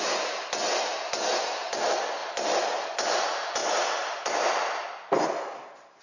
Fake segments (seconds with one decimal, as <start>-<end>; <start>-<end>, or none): 3.6-5.3

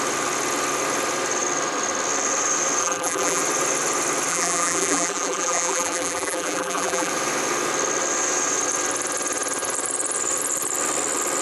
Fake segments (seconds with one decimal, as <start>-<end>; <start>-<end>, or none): 2.8-3.4; 4.3-7.1

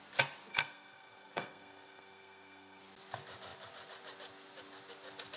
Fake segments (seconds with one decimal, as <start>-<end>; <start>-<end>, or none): 0.5-2.8

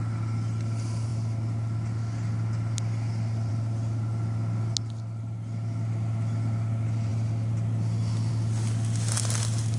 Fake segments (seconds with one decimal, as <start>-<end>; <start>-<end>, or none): none

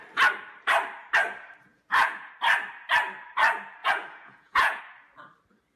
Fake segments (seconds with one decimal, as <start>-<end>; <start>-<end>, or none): 1.7-2.3; 3.8-4.8

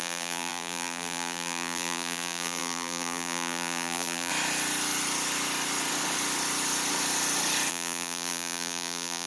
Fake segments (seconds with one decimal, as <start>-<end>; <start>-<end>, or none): 0.0-4.3; 7.7-9.3

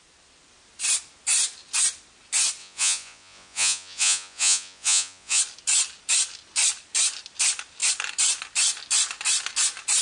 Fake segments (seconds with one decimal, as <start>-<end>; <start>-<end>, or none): 2.6-5.4